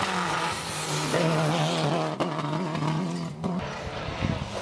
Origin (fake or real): real